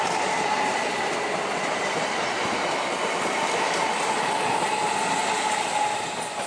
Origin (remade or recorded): recorded